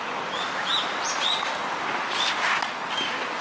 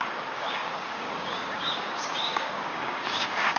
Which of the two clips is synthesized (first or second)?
second